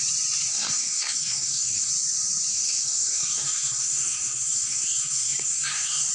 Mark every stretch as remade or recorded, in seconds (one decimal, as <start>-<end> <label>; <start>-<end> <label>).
0.0-0.5 recorded; 0.5-1.9 remade; 1.9-2.5 recorded; 2.5-6.1 remade